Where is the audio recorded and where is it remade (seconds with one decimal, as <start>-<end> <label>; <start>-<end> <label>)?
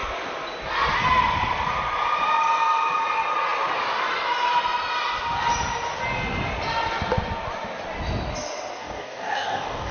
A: 0.0-8.8 recorded; 8.8-9.9 remade